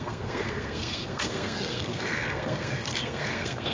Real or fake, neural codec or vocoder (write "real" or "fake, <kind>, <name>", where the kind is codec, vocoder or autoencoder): fake, codec, SNAC